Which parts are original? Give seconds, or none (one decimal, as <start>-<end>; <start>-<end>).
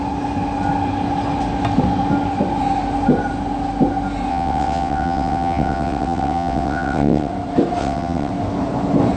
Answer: 0.0-4.3; 7.3-7.8; 8.3-9.2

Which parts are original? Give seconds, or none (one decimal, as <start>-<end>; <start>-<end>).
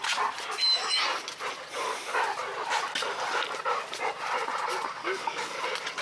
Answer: 0.0-5.0; 5.6-6.0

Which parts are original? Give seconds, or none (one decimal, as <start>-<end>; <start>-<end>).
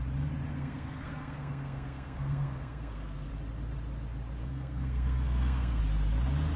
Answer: 0.0-0.5; 3.3-4.4; 5.8-6.6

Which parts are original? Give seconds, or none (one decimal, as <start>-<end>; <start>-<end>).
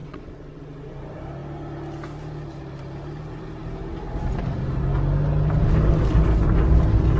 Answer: 0.6-7.2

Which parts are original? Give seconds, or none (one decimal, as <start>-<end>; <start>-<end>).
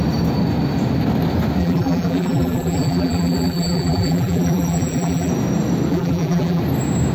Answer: 0.0-1.6; 5.3-5.9; 6.6-7.1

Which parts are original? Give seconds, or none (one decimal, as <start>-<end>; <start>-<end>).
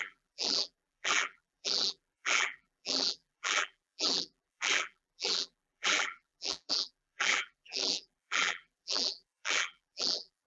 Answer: none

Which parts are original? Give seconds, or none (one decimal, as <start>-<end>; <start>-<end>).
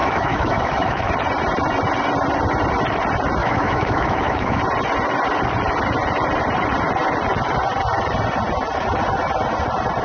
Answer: 1.1-3.4; 4.6-10.0